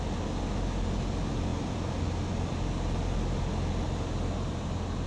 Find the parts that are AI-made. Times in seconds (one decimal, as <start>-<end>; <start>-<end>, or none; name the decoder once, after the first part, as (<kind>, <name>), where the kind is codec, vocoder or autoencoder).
none